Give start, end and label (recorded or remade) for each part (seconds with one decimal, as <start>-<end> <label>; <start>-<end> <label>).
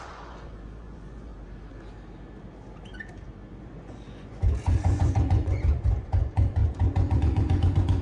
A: 0.0-1.3 remade; 1.3-3.6 recorded; 3.6-8.0 remade